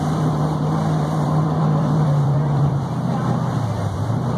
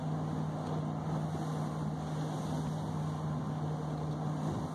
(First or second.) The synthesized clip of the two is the first